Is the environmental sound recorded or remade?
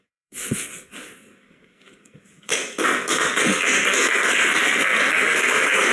remade